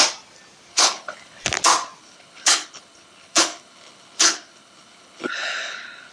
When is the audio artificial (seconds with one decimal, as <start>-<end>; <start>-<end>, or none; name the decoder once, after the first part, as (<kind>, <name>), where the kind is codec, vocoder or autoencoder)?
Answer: 0.7-1.4 (codec, HILCodec); 2.0-6.1